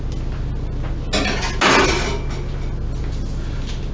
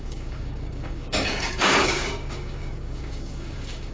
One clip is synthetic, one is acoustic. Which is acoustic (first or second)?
first